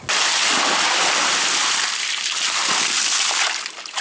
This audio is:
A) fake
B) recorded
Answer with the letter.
B